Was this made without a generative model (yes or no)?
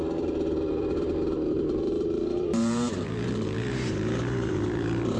no